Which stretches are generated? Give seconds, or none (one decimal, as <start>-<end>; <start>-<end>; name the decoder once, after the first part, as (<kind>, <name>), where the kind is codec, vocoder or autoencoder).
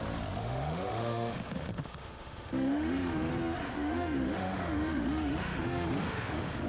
0.4-3.3 (autoencoder, DAC-VAE); 3.7-6.7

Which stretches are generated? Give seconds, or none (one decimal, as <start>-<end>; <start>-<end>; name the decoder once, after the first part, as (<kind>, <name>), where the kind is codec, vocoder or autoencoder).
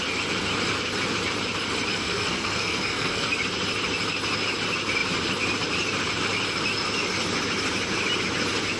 1.9-3.3 (codec, SNAC)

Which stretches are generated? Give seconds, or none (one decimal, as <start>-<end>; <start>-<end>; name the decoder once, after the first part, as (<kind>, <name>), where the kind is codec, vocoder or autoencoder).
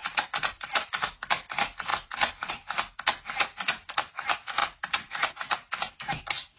1.9-2.5 (vocoder, BigVGAN v2); 4.6-5.3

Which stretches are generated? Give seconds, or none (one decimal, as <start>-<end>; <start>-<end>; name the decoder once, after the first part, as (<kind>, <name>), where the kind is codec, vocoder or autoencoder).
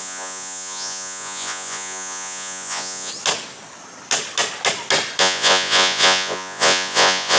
0.0-3.1 (vocoder, Vocos); 5.2-7.4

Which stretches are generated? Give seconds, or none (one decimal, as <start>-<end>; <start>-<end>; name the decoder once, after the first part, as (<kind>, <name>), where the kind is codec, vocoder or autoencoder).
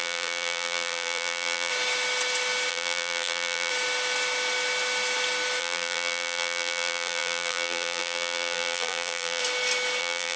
0.0-1.7 (vocoder, BigVGAN v2); 2.7-3.7; 5.6-9.4; 10.0-10.4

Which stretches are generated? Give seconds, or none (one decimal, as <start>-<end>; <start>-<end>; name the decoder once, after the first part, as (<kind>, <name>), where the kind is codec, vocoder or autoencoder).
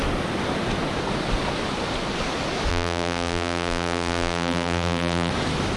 2.7-5.3 (vocoder, BigVGAN v2)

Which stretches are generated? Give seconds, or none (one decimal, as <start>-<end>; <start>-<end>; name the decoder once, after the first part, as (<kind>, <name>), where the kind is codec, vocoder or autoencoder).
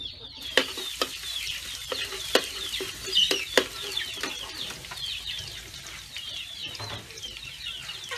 0.0-6.6 (vocoder, BigVGAN v2)